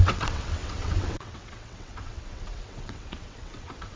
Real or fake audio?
fake